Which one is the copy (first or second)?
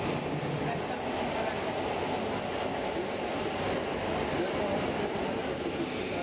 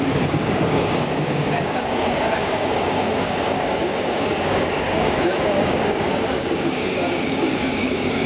second